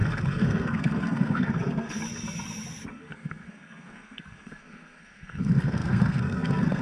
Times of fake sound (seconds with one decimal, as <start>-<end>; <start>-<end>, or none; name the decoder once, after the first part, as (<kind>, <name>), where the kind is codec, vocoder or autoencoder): 0.0-2.0 (codec, SNAC); 2.9-6.8